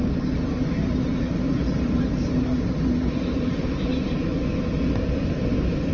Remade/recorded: remade